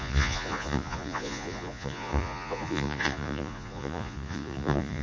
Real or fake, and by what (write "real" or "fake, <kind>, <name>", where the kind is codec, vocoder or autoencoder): fake, vocoder, Vocos